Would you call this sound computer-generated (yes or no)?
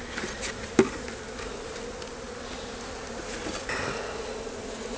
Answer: no